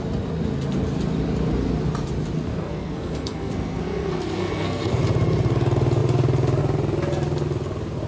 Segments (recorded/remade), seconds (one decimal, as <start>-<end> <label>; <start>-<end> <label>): 0.0-2.5 recorded; 2.5-5.0 remade; 5.0-8.1 recorded